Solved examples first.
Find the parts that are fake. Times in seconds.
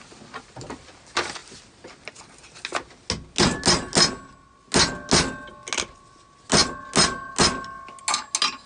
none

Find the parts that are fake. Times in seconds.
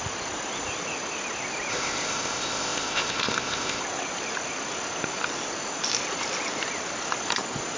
1.7-3.8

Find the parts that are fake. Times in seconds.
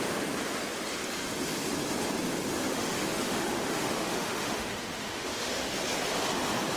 2.7-5.7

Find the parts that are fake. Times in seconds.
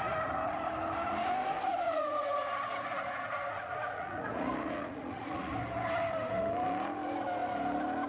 1.7-5.5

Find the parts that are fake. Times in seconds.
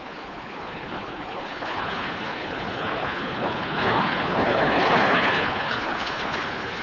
0.0-6.8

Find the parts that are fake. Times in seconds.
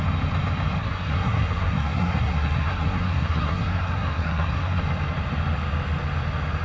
0.8-4.8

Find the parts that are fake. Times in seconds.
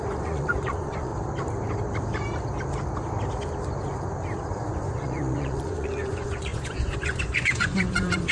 0.0-1.1; 4.7-8.3